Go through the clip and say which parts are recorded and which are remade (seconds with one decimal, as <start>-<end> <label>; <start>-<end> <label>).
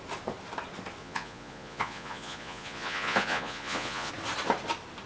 0.0-1.0 recorded; 1.0-4.1 remade; 4.1-5.1 recorded